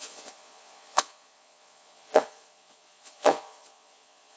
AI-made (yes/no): yes